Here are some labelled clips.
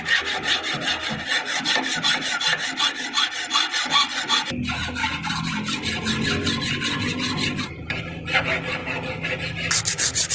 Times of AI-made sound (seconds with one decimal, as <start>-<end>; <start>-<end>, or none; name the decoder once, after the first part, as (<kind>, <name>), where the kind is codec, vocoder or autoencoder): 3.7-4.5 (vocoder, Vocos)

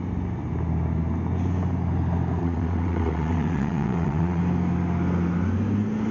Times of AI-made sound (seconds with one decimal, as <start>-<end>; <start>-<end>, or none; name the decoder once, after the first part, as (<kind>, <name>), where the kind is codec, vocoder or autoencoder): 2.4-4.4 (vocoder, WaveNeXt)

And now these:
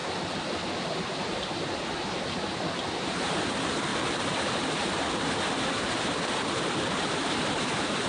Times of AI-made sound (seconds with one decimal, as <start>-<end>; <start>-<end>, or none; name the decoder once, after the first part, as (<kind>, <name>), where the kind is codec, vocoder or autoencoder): 3.9-8.1 (vocoder, BigVGAN v2)

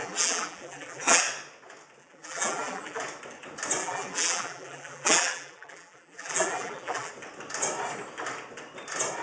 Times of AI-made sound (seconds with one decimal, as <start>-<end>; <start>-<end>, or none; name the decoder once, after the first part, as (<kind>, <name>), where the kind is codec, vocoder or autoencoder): 0.0-1.2 (vocoder, BigVGAN v2); 2.0-3.0; 3.8-7.1

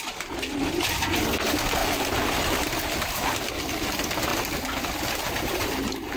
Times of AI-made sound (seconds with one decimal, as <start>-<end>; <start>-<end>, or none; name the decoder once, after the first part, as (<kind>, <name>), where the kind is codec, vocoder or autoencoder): 1.8-3.5 (vocoder, BigVGAN v2); 5.5-6.2

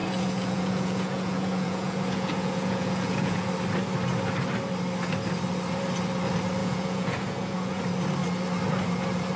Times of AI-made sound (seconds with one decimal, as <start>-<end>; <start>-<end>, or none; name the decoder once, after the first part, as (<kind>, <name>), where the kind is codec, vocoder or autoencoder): 0.0-3.5 (vocoder, Vocos); 6.6-7.8

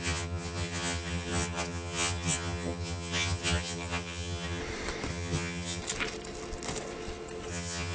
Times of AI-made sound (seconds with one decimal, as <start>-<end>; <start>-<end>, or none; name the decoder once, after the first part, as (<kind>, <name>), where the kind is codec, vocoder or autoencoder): 0.0-4.6 (vocoder, HiFi-GAN); 5.1-5.8; 7.5-7.9